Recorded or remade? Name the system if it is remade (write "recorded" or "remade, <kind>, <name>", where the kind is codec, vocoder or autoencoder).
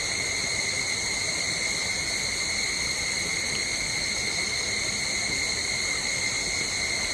recorded